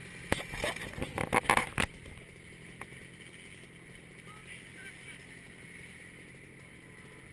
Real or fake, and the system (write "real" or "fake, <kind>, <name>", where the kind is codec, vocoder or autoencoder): real